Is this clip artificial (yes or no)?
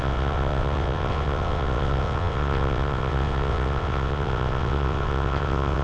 yes